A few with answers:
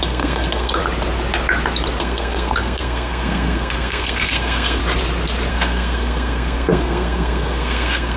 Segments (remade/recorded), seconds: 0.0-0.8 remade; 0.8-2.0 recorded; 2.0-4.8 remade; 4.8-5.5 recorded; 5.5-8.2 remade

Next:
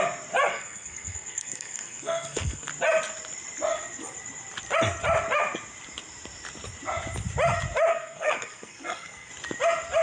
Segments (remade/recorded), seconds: 0.0-0.5 recorded; 0.5-2.7 remade; 2.7-7.9 recorded; 7.9-9.3 remade; 9.3-10.0 recorded

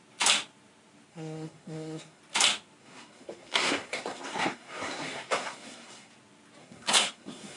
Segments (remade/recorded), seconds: 0.0-1.1 recorded; 1.1-2.2 remade; 2.2-2.8 recorded; 2.8-6.1 remade; 6.1-6.6 recorded; 6.6-7.6 remade

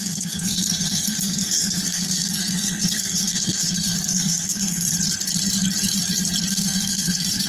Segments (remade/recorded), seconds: 0.0-4.9 remade; 4.9-6.5 recorded; 6.5-7.5 remade

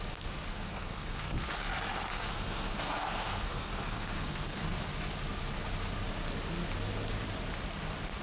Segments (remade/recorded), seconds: 0.0-0.5 recorded; 0.5-1.6 remade; 1.6-2.1 recorded; 2.1-4.6 remade; 4.6-8.2 recorded